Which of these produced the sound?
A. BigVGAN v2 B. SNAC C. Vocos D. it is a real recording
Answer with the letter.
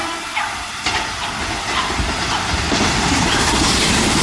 D